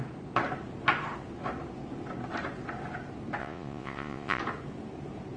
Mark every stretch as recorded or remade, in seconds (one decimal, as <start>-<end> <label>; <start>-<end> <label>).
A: 0.0-3.4 recorded; 3.4-4.4 remade; 4.4-5.4 recorded